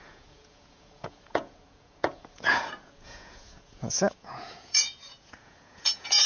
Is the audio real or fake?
fake